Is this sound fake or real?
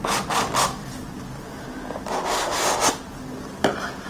real